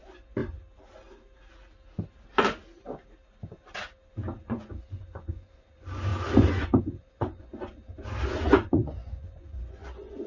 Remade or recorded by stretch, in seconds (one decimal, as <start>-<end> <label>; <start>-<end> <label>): 0.0-0.4 remade; 0.4-4.4 recorded; 4.4-7.5 remade; 7.5-8.4 recorded; 8.4-10.3 remade